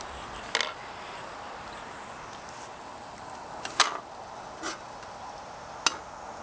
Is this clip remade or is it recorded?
recorded